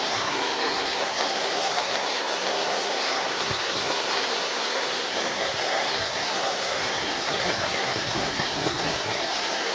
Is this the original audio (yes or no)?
no